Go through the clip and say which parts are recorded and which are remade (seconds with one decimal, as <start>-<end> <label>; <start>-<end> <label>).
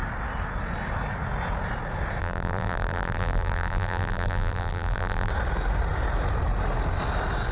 0.0-2.2 recorded; 2.2-5.3 remade; 5.3-7.5 recorded